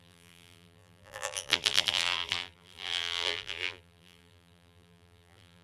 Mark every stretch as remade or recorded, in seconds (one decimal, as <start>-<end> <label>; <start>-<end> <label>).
0.0-5.6 remade